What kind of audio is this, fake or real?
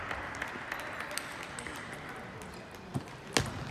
real